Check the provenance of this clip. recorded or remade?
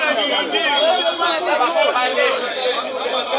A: recorded